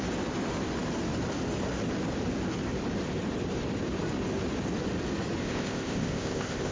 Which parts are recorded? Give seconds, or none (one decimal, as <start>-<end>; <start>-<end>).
0.0-5.4